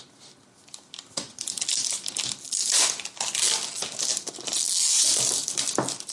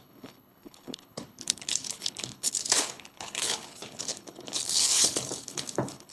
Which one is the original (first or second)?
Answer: first